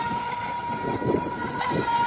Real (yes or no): yes